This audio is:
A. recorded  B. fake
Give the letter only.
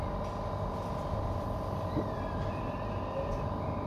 A